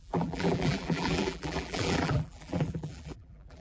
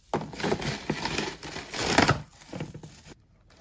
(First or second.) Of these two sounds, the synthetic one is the first